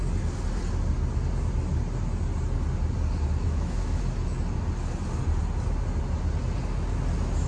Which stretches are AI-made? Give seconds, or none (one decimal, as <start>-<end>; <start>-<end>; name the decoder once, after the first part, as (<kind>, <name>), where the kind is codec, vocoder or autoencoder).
3.4-4.0 (autoencoder, DAC-VAE)